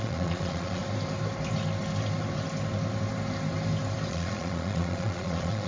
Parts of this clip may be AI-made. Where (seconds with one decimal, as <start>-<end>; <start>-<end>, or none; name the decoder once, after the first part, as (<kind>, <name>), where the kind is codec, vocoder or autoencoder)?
0.0-0.8 (vocoder, Vocos); 4.1-5.7